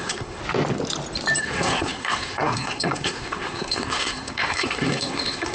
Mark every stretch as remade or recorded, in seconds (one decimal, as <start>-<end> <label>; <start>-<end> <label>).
0.0-0.4 remade; 0.4-1.4 recorded; 1.4-5.5 remade